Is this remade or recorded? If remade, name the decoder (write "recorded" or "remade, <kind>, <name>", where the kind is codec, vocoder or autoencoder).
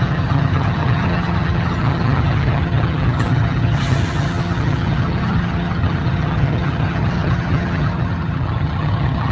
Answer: remade, vocoder, HiFi-GAN